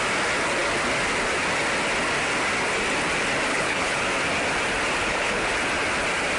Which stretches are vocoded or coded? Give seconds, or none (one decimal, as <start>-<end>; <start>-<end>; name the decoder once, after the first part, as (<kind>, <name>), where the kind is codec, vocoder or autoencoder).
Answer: 3.5-4.0 (codec, HILCodec); 5.0-5.5